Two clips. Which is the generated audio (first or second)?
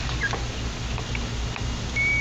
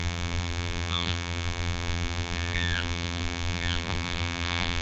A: second